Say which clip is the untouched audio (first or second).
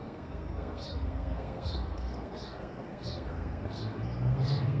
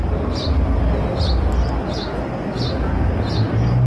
second